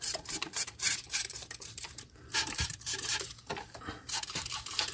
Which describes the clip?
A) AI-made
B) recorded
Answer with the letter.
A